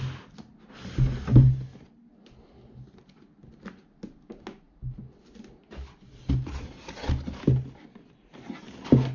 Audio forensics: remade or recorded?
recorded